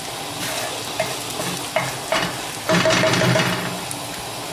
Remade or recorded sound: recorded